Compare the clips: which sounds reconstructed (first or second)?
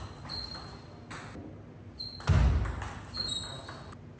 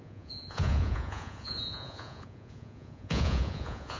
second